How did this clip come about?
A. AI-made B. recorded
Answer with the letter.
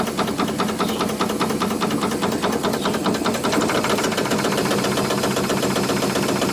B